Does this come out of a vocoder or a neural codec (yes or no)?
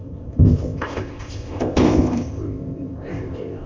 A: yes